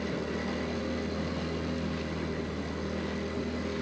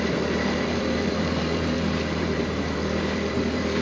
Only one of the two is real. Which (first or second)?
first